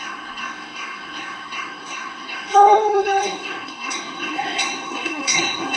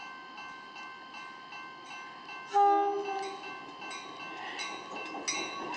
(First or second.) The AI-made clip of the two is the first